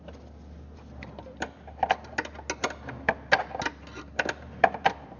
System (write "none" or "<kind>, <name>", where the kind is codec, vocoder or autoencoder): none